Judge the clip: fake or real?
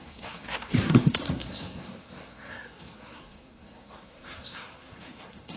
fake